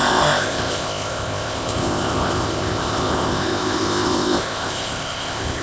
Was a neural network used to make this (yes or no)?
yes